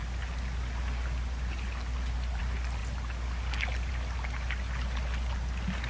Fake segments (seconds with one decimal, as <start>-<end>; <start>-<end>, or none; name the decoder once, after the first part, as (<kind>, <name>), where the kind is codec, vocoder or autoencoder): none